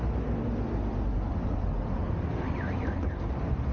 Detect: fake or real real